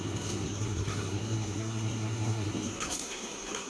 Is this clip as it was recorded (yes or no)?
no